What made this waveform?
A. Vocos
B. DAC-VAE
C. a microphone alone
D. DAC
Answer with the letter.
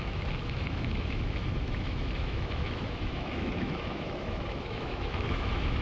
B